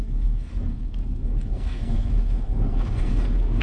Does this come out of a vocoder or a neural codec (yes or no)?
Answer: yes